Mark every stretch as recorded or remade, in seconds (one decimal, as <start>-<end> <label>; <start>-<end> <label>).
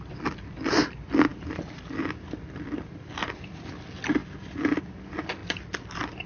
0.0-6.3 recorded